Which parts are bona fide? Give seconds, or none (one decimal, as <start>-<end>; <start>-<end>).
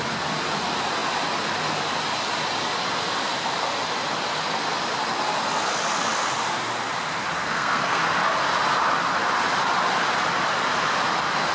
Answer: 0.0-7.4; 8.0-11.5